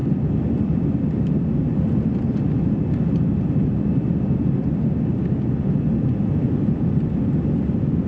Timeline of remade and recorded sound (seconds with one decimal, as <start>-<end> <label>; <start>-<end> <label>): 0.0-8.1 recorded